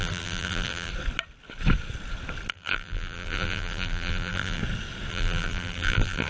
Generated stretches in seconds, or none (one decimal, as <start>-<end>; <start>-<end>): 0.0-0.9; 2.5-4.6; 5.1-6.3